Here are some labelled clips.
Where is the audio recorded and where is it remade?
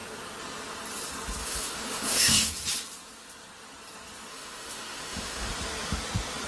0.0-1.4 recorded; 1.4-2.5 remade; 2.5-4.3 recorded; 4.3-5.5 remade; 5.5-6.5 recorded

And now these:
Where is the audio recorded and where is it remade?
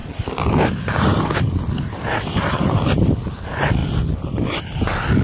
0.0-1.1 remade; 1.1-2.5 recorded; 2.5-5.2 remade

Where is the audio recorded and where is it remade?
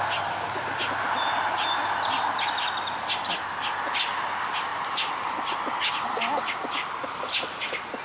0.0-8.0 recorded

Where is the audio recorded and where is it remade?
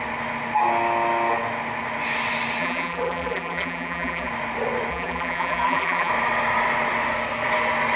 0.0-2.6 recorded; 2.6-4.3 remade; 4.3-4.9 recorded; 4.9-6.1 remade; 6.1-8.0 recorded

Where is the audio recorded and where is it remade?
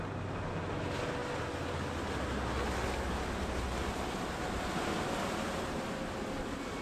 0.0-6.8 recorded